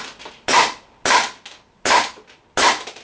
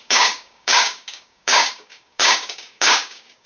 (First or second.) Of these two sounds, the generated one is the second